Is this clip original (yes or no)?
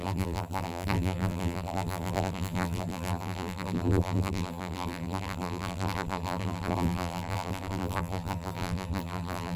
no